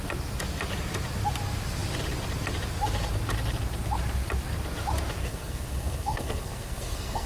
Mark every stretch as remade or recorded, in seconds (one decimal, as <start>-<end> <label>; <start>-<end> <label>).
0.0-5.2 recorded; 5.2-7.3 remade